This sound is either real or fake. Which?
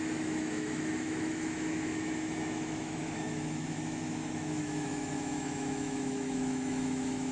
fake